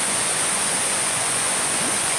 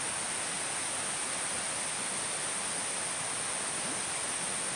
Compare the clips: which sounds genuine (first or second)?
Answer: second